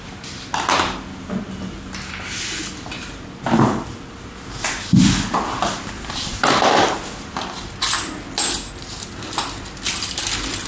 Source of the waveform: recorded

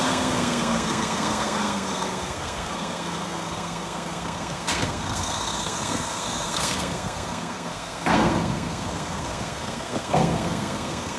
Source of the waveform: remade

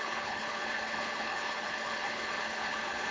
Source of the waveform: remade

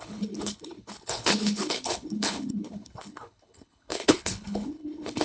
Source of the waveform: remade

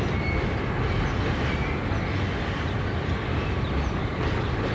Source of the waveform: recorded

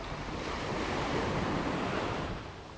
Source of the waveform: recorded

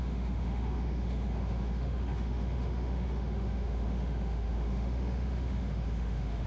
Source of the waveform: remade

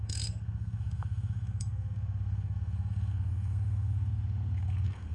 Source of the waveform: remade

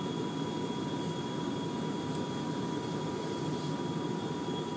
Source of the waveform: recorded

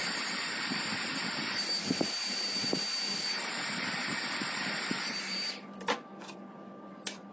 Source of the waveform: remade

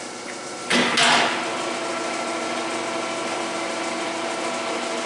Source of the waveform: recorded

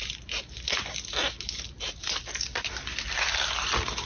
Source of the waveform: recorded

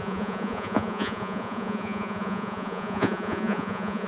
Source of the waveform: remade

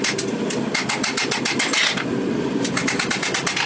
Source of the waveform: recorded